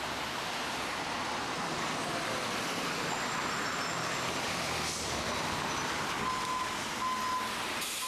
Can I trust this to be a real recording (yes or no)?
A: yes